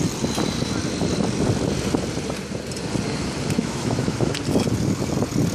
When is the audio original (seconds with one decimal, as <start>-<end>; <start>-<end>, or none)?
0.0-3.6; 4.3-5.5